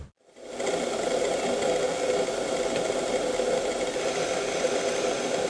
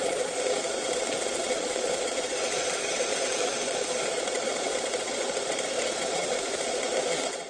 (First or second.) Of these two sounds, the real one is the first